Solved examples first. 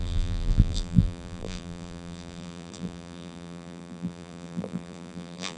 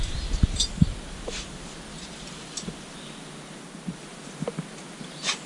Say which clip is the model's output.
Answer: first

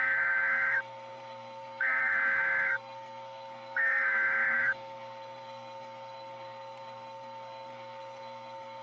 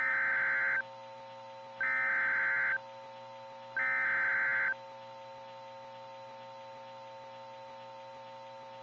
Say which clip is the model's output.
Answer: first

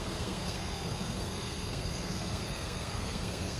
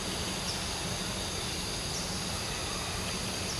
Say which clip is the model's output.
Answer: first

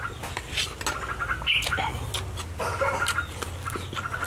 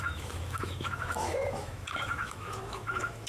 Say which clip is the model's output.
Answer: second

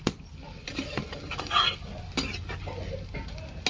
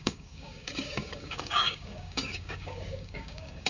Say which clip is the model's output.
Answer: second